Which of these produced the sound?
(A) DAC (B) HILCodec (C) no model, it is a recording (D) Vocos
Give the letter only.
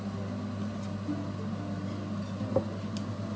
C